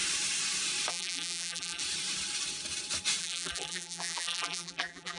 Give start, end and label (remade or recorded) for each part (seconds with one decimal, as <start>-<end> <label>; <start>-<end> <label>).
0.0-0.9 recorded; 0.9-1.8 remade; 1.8-3.2 recorded; 3.2-5.2 remade